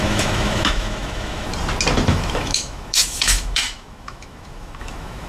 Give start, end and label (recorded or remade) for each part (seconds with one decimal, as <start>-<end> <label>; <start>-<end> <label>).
0.0-1.5 remade; 1.5-2.1 recorded; 2.1-5.3 remade